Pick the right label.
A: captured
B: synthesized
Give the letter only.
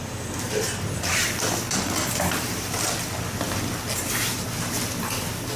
A